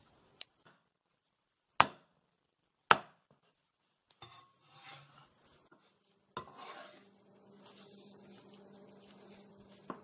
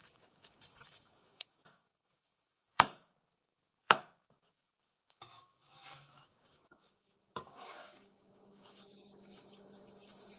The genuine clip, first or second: first